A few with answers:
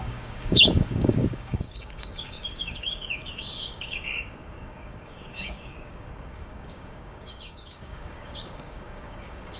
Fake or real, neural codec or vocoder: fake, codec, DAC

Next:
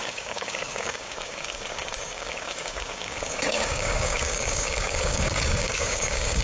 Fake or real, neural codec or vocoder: fake, codec, DAC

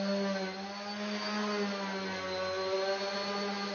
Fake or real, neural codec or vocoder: real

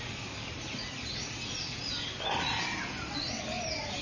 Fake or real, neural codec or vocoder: real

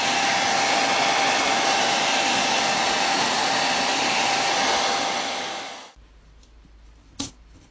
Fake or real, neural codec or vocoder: real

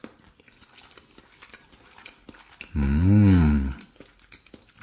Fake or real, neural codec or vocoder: real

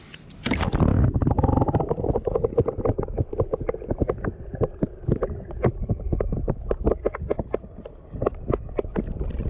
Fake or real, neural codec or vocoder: real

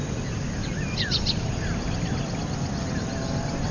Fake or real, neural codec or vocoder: real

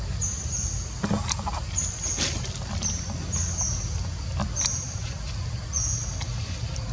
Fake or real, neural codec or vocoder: real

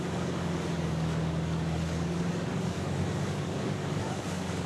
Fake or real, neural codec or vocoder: fake, codec, DAC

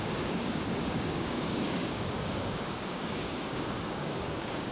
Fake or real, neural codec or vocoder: fake, codec, DAC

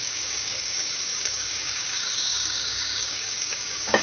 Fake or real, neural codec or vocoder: fake, codec, DAC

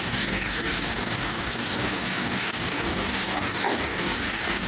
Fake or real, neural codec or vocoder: fake, codec, DAC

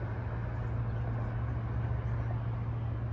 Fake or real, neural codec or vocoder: real